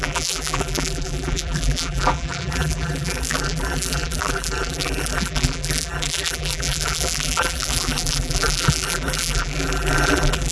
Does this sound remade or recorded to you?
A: remade